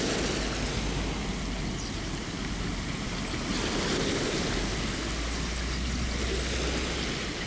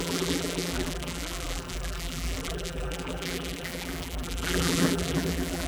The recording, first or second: first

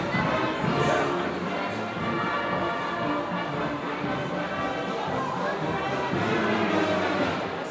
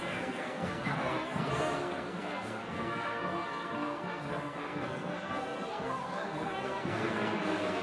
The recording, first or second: first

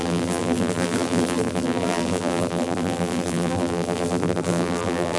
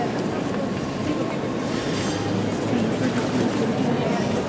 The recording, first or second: second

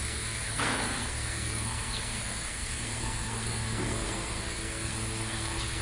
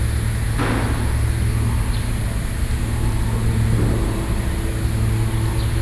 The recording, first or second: second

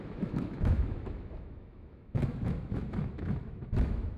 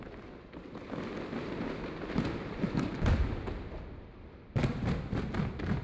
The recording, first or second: second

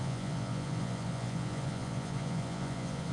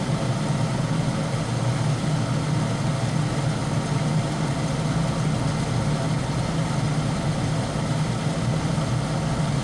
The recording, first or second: second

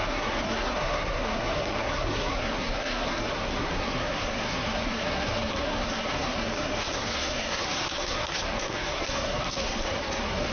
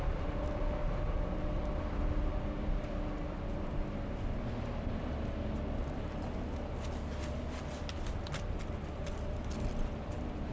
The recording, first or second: second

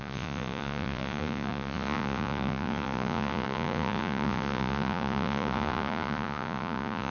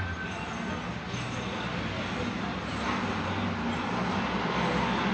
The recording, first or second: second